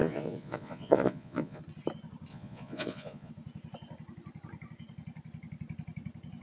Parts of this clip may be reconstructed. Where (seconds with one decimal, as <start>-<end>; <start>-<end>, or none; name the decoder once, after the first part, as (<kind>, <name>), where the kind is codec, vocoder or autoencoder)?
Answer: 0.0-1.6 (vocoder, Vocos); 2.3-3.3